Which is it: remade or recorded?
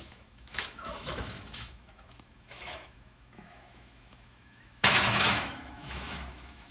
remade